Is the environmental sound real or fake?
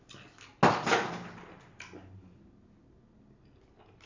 real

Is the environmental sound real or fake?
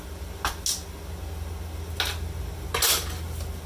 real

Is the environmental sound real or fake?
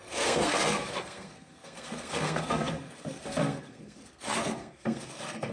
fake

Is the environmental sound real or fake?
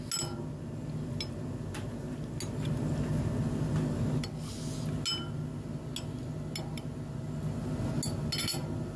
real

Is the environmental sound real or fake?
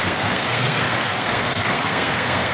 fake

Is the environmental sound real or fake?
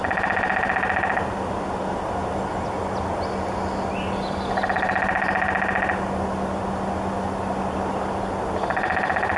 real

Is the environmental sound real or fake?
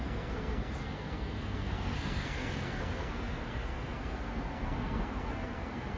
fake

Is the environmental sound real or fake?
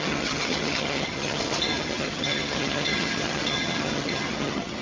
fake